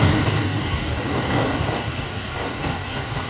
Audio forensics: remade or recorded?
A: remade